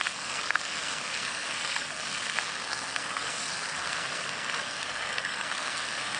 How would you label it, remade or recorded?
remade